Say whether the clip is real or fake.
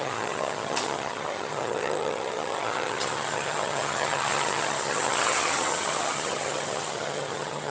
fake